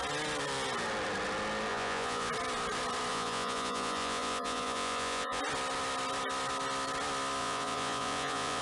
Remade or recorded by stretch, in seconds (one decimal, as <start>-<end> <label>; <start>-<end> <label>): 0.0-1.7 recorded; 1.7-2.3 remade; 2.3-3.1 recorded; 3.1-5.4 remade; 5.4-7.4 recorded; 7.4-8.6 remade